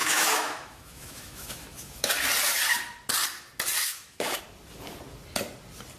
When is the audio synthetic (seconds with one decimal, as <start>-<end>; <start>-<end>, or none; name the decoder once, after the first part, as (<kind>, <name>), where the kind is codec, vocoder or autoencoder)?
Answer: 0.0-2.1 (autoencoder, DAC-VAE); 3.8-4.4